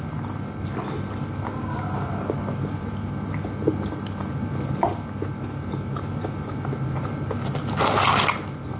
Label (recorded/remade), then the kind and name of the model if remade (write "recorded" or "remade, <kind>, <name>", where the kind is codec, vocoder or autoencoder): recorded